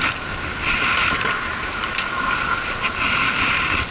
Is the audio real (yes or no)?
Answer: yes